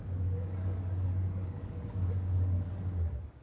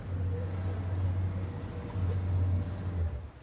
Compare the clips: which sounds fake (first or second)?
first